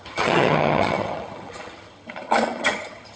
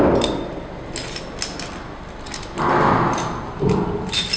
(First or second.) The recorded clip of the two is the second